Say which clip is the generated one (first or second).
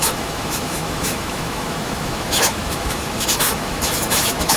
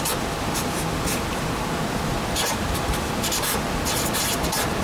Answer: first